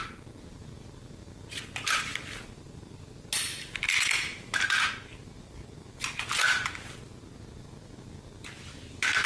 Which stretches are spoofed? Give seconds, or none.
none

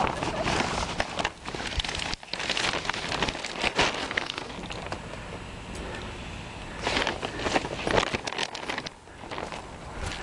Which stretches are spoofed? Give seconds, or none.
4.0-4.5 (codec, SNAC)

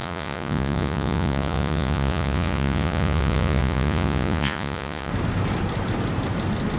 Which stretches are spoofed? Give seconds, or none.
0.0-5.1 (vocoder, Vocos)

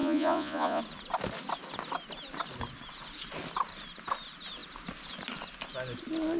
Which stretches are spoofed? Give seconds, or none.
0.0-0.8 (vocoder, Vocos)